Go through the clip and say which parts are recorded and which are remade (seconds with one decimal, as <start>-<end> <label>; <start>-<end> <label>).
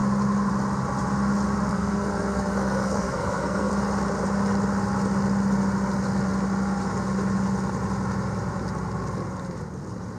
0.0-1.7 recorded; 1.7-3.7 remade; 3.7-10.2 recorded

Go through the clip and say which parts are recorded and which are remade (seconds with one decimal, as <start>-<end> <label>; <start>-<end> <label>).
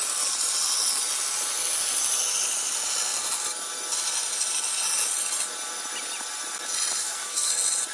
0.0-7.0 recorded; 7.0-7.5 remade; 7.5-7.9 recorded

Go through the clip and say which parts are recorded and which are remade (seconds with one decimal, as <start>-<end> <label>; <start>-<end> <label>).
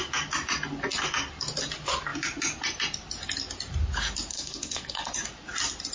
0.0-4.3 recorded; 4.3-5.1 remade; 5.1-5.9 recorded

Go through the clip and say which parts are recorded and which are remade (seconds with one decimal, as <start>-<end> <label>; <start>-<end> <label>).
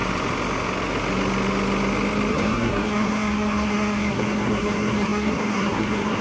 0.0-2.3 recorded; 2.3-6.2 remade